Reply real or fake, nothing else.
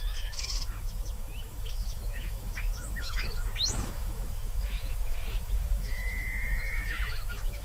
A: fake